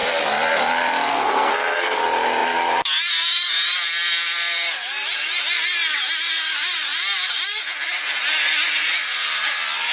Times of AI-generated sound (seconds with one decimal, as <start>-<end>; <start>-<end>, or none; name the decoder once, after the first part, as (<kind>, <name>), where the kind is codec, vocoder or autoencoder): 1.1-2.0 (codec, SNAC)